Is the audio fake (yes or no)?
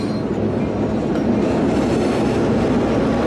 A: no